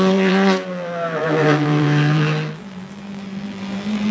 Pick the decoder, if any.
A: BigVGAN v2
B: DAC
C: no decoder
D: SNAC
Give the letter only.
A